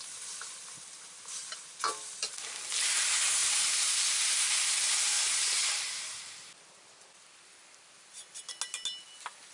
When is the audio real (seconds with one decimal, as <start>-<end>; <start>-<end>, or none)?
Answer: 0.0-9.5